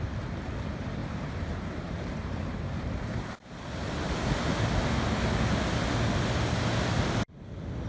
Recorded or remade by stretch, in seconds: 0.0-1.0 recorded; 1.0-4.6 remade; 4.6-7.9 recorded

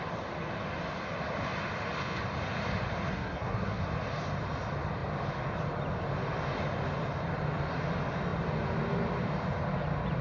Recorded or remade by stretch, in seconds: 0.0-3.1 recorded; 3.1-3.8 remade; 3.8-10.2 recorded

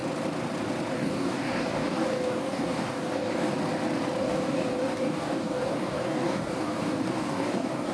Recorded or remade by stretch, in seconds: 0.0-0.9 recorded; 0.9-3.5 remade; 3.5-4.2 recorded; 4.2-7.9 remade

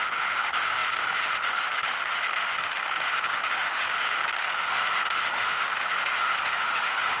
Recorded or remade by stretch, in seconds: 0.0-7.2 remade

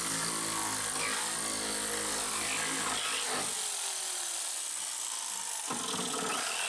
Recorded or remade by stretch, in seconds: 0.0-6.7 recorded

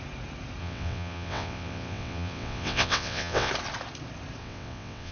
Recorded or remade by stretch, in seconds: 0.0-0.6 recorded; 0.6-3.5 remade; 3.5-4.4 recorded; 4.4-5.1 remade